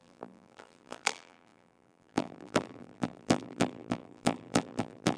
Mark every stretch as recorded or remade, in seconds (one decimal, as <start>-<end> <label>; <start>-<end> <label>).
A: 0.0-5.2 remade